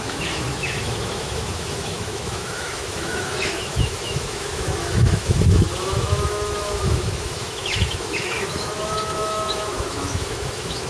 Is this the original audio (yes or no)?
no